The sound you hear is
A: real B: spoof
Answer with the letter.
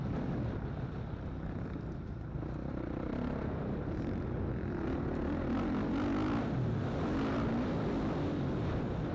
A